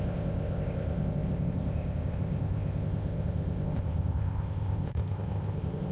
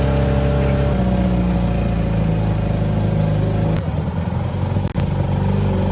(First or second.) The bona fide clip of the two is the second